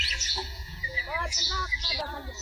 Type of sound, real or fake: fake